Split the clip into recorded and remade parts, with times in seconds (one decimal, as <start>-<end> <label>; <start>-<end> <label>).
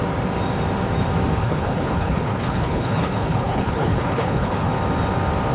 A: 0.0-1.4 recorded; 1.4-4.7 remade; 4.7-5.5 recorded